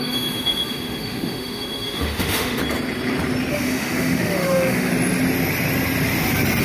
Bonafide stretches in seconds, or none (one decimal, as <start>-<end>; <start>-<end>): 2.6-3.5; 4.9-6.6